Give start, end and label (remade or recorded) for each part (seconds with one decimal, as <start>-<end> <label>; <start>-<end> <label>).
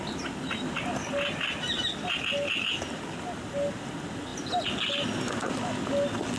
0.0-6.4 recorded